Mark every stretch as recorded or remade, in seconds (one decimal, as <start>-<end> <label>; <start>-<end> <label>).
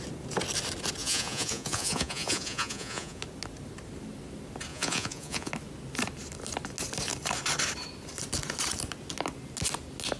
0.0-1.0 recorded; 1.0-3.2 remade; 3.2-4.7 recorded; 4.7-5.5 remade; 5.5-10.2 recorded